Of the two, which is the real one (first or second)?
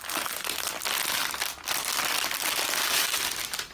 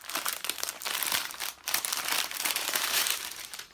first